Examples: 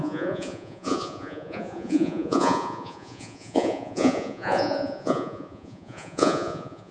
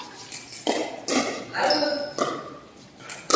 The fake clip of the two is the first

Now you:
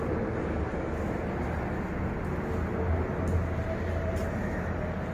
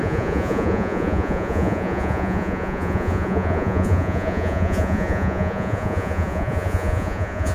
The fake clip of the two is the second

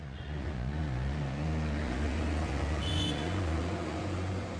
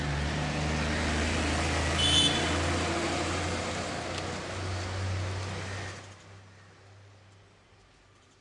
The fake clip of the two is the first